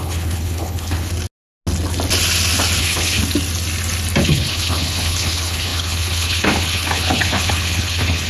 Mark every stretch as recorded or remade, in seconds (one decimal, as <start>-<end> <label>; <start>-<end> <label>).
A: 0.0-1.1 remade; 1.1-2.8 recorded; 2.8-3.2 remade; 3.2-4.2 recorded; 4.2-8.3 remade

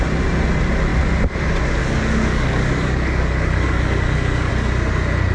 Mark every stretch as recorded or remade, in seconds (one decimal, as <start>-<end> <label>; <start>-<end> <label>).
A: 0.0-1.8 recorded; 1.8-4.5 remade; 4.5-5.3 recorded

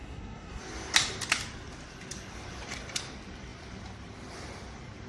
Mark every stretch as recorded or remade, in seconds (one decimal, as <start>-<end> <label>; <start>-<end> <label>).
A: 0.0-0.6 remade; 0.6-5.1 recorded

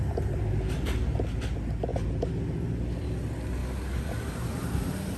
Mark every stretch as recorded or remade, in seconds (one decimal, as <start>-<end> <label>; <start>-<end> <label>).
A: 0.0-5.2 recorded